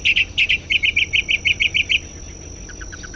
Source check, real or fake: real